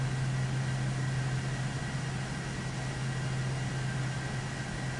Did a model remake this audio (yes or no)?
no